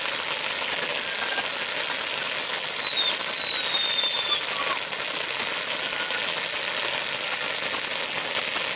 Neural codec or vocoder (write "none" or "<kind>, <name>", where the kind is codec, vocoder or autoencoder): none